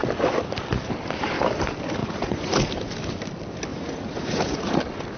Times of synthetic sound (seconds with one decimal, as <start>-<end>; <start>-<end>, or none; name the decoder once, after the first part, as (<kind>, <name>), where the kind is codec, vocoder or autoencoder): 2.0-2.7 (vocoder, Vocos); 3.7-4.8